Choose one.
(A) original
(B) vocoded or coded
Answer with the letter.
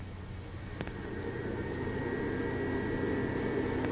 A